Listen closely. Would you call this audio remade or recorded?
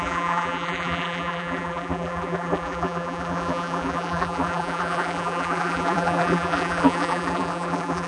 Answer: remade